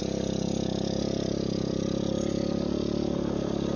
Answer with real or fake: real